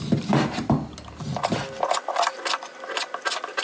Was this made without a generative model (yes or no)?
yes